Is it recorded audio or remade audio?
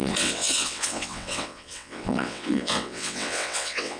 remade